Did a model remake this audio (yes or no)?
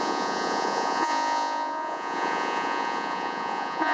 yes